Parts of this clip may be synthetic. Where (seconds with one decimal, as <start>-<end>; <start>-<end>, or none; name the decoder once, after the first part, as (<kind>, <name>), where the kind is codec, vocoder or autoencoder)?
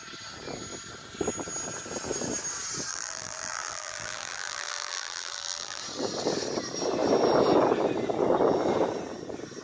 2.9-5.8 (vocoder, BigVGAN v2)